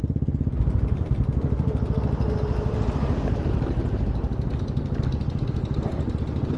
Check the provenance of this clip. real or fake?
real